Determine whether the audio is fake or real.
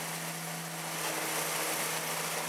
real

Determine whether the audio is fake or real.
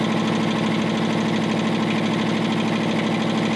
real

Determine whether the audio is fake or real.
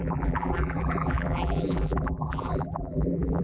fake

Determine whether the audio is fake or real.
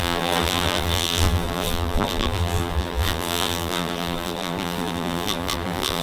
fake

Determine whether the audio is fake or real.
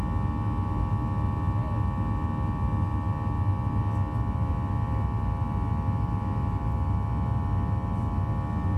real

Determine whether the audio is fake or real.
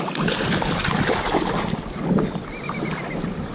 real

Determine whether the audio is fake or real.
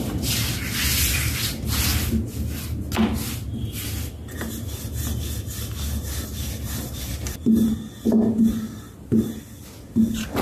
real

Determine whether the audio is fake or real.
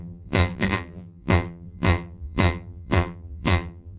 fake